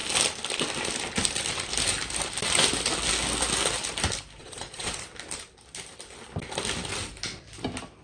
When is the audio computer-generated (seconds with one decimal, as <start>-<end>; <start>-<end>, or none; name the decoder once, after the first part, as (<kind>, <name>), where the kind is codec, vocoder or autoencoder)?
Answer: 4.4-4.9 (vocoder, Vocos)